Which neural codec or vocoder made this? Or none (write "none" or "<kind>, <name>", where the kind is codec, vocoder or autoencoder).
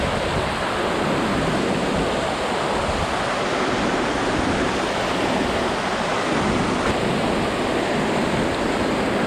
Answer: none